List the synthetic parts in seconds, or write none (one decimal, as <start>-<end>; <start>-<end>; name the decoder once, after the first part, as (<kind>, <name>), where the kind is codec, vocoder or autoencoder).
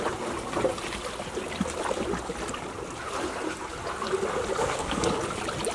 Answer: 4.6-5.2 (codec, DAC)